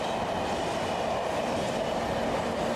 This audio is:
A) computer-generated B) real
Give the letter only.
B